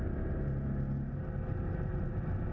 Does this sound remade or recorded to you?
recorded